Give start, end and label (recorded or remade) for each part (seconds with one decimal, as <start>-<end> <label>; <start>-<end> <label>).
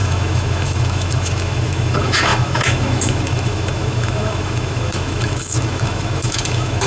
0.0-6.9 remade